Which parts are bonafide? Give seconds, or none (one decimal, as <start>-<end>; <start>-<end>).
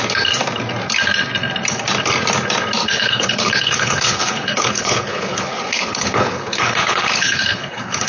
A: 0.0-2.8